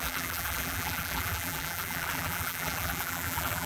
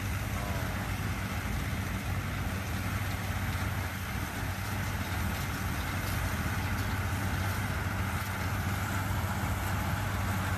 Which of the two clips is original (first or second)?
second